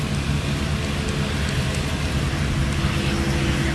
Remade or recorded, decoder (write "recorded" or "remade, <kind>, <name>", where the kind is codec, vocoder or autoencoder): recorded